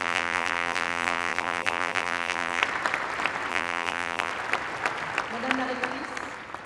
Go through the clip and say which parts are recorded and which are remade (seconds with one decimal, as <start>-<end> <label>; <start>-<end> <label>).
0.0-2.6 remade; 2.6-3.5 recorded; 3.5-4.3 remade; 4.3-6.7 recorded

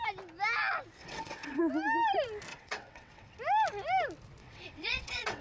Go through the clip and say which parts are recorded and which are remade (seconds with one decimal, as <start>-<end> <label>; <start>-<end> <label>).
0.0-1.0 recorded; 1.0-1.6 remade; 1.6-2.5 recorded; 2.5-3.4 remade; 3.4-4.4 recorded; 4.4-5.4 remade

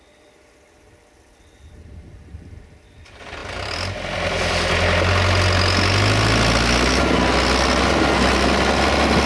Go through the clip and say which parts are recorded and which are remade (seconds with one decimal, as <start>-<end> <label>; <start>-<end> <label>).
0.0-9.3 recorded